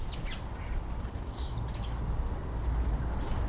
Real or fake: real